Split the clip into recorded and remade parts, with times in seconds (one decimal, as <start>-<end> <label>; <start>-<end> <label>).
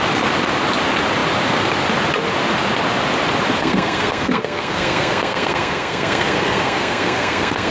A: 0.0-3.6 recorded; 3.6-7.7 remade